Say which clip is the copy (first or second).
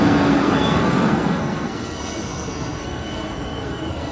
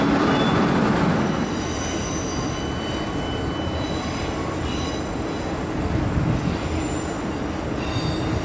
first